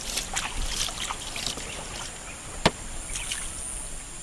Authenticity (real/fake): real